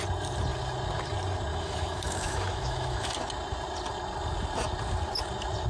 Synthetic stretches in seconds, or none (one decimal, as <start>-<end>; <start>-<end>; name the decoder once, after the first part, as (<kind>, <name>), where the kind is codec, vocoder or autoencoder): 1.5-3.1 (autoencoder, DAC-VAE)